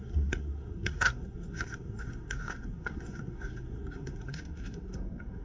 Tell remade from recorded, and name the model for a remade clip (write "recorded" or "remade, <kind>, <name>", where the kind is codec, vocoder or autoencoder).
remade, codec, SNAC